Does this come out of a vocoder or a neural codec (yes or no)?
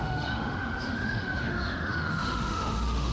yes